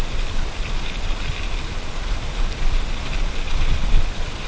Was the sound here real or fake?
real